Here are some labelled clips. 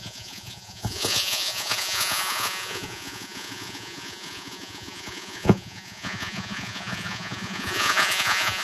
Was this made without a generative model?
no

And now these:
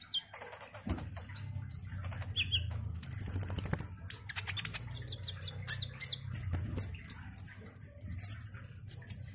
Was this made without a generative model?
yes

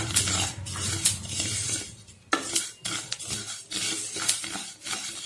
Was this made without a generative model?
yes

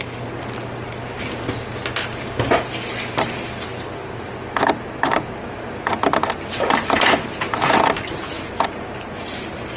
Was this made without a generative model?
yes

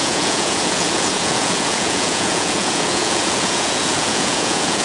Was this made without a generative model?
no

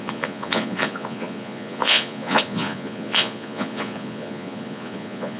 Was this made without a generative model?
no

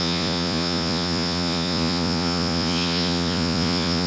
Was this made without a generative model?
no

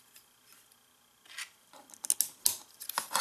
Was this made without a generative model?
yes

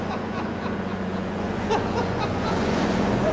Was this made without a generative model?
no